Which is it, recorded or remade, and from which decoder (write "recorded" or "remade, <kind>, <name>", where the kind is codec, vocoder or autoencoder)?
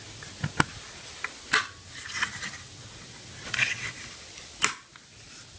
recorded